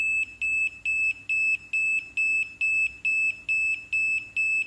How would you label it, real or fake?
real